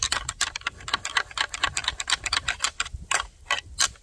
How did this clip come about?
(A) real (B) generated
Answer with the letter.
A